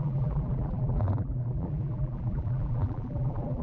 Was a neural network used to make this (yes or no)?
yes